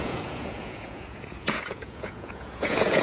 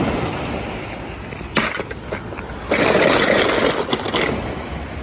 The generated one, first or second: first